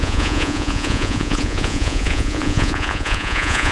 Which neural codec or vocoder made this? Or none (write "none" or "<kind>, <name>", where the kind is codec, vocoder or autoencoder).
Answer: vocoder, Vocos